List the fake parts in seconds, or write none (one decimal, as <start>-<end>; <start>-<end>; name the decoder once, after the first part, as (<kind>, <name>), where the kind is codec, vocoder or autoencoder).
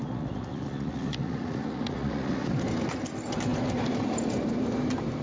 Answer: 0.0-2.5 (vocoder, Vocos)